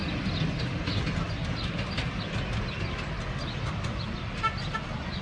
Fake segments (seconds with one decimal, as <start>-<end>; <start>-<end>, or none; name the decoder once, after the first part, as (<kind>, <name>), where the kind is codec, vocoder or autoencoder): none